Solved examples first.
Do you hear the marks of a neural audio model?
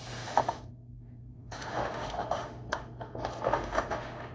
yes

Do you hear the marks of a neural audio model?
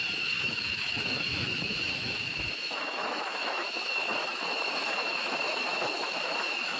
yes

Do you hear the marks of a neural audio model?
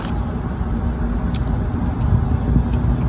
no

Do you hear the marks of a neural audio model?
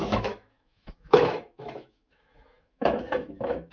yes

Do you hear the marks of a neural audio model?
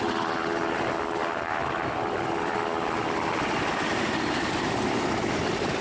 no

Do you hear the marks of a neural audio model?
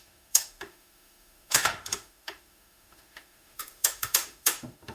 yes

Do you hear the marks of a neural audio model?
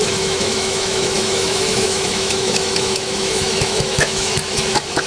yes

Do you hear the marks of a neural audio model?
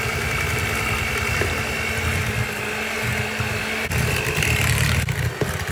no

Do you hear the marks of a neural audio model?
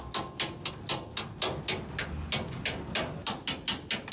no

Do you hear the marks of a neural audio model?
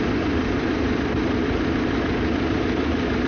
no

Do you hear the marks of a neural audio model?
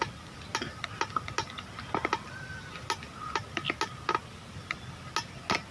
no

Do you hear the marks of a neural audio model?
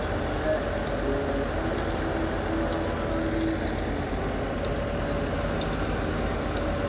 no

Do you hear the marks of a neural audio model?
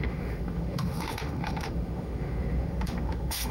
yes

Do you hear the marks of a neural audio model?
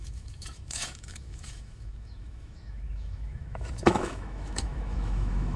yes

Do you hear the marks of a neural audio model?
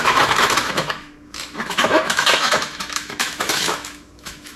yes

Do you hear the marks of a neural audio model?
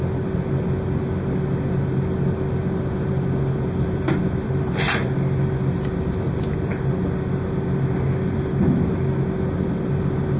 no